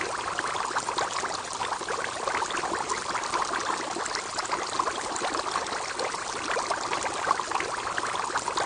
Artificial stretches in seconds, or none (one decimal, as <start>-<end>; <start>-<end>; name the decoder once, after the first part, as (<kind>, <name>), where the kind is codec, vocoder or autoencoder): none